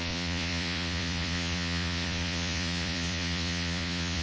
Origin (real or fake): fake